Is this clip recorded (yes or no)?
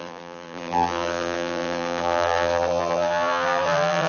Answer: no